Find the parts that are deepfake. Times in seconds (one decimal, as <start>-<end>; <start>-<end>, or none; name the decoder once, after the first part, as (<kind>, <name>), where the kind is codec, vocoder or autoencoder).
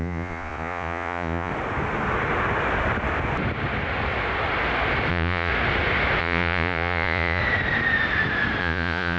0.0-1.5 (vocoder, Vocos); 5.1-5.5; 6.2-7.4; 8.6-9.2